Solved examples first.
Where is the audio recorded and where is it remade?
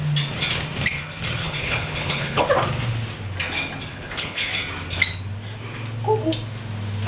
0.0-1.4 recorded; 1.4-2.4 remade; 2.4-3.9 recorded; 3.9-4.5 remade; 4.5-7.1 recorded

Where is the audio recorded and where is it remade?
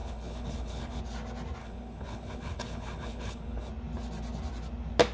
0.0-1.0 remade; 1.0-1.6 recorded; 1.6-3.7 remade; 3.7-5.1 recorded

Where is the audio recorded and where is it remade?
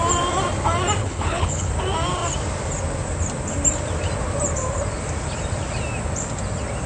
0.0-1.0 recorded; 1.0-1.7 remade; 1.7-6.9 recorded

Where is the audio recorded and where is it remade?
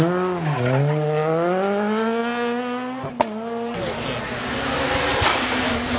0.0-6.0 recorded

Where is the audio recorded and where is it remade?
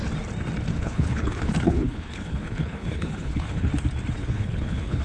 0.0-0.7 recorded; 0.7-3.7 remade; 3.7-4.2 recorded; 4.2-5.0 remade